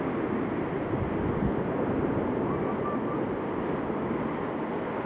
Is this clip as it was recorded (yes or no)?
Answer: yes